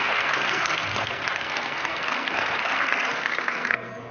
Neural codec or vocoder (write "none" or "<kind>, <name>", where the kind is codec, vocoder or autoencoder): codec, SNAC